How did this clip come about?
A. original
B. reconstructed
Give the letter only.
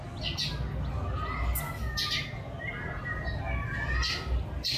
A